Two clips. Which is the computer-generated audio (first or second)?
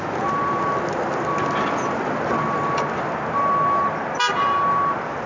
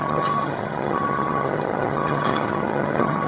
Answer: second